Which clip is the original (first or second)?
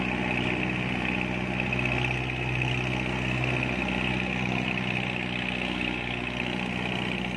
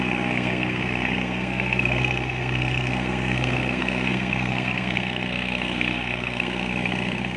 first